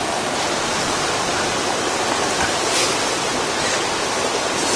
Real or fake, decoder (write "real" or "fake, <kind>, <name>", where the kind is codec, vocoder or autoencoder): real